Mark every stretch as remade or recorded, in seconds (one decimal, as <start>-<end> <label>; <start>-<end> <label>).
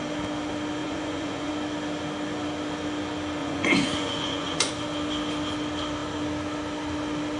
0.0-0.8 recorded; 0.8-1.5 remade; 1.5-3.4 recorded; 3.4-4.7 remade; 4.7-7.4 recorded